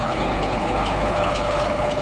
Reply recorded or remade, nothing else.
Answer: remade